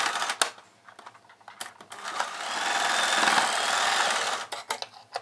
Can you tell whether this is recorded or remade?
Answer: recorded